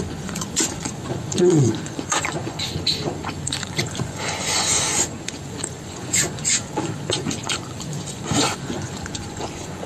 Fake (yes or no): yes